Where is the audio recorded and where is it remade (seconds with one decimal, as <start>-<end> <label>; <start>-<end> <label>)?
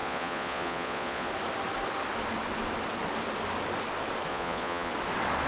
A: 0.0-1.3 remade; 1.3-4.3 recorded; 4.3-4.9 remade; 4.9-5.5 recorded